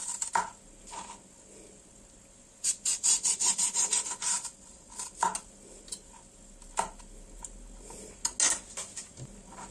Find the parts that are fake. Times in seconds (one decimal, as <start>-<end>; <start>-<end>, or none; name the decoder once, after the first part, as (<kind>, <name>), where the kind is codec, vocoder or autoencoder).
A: 2.9-5.2 (vocoder, BigVGAN v2)